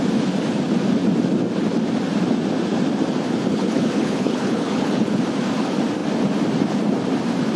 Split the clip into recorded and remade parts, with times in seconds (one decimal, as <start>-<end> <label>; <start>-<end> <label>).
0.0-3.5 recorded; 3.5-5.2 remade; 5.2-7.6 recorded